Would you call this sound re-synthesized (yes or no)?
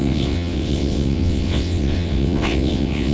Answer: yes